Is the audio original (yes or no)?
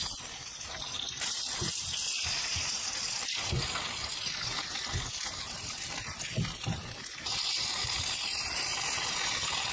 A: yes